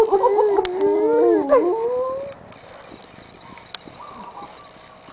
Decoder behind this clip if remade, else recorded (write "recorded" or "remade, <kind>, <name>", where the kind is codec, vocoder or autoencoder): recorded